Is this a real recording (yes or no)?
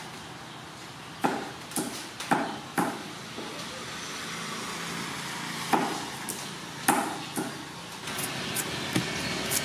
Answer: yes